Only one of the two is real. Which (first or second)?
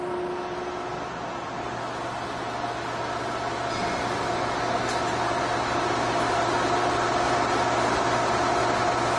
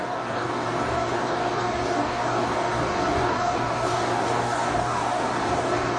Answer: first